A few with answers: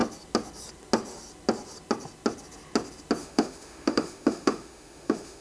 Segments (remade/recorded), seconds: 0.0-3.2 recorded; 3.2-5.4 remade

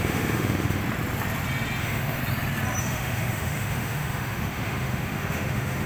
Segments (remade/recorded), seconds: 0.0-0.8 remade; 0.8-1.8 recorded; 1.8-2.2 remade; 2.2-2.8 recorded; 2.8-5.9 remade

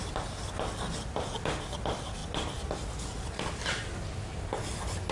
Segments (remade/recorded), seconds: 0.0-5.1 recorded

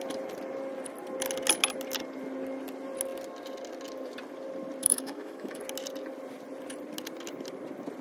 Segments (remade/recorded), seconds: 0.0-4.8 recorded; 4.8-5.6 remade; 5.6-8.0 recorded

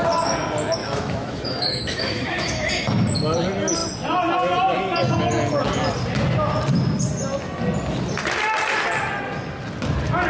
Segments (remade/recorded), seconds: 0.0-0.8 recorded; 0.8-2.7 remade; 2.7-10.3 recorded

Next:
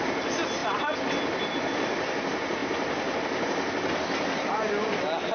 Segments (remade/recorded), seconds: 0.0-5.3 recorded